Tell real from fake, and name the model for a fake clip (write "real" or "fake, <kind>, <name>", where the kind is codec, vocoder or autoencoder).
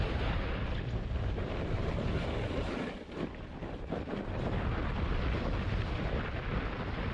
real